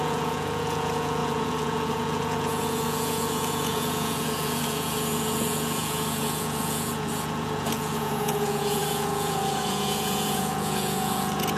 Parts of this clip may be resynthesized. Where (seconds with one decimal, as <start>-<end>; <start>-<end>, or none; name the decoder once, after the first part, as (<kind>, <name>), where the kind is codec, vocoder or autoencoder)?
0.0-11.6 (vocoder, Vocos)